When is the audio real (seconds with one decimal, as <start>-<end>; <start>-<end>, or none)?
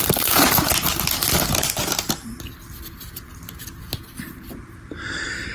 0.7-4.0